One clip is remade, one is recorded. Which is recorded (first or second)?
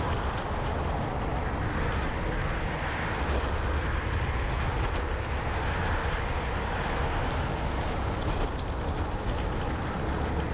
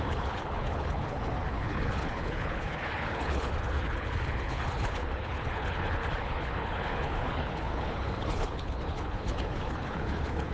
first